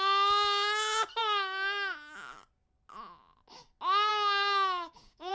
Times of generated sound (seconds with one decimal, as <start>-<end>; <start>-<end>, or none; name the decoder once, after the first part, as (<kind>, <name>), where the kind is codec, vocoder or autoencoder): 4.1-5.3 (codec, DAC)